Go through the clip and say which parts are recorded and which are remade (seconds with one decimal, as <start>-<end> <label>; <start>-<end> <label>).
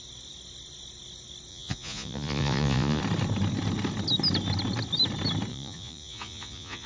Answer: 0.0-1.5 recorded; 1.5-3.0 remade; 3.0-5.5 recorded; 5.5-6.9 remade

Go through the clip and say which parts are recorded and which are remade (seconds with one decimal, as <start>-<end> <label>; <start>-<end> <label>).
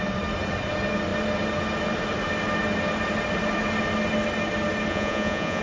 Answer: 0.0-4.9 recorded; 4.9-5.6 remade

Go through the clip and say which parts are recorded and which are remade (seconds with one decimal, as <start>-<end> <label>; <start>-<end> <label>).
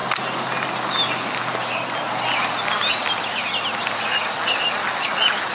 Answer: 0.0-5.5 recorded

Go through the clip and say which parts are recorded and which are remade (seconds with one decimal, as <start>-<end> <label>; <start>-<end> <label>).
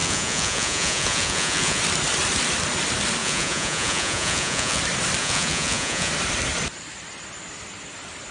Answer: 0.0-1.8 remade; 1.8-3.2 recorded; 3.2-4.8 remade; 4.8-5.2 recorded; 5.2-6.1 remade; 6.1-8.3 recorded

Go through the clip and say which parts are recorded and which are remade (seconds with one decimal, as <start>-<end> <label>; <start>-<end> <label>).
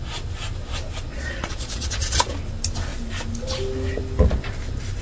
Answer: 0.0-1.1 recorded; 1.1-2.3 remade; 2.3-5.0 recorded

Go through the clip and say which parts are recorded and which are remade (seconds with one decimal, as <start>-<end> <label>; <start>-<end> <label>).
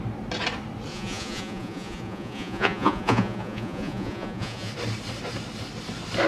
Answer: 0.0-0.9 recorded; 0.9-4.7 remade; 4.7-6.3 recorded